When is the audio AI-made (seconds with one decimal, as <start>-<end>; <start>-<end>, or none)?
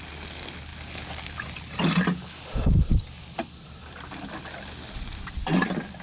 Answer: none